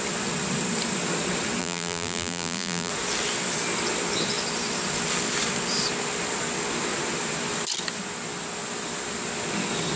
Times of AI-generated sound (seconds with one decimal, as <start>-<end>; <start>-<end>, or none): 1.6-2.9